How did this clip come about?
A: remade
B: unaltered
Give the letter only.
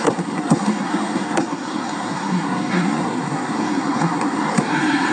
A